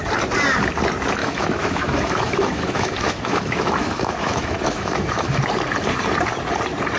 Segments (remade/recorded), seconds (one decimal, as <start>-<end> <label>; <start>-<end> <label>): 0.0-1.2 recorded; 1.2-5.4 remade; 5.4-7.0 recorded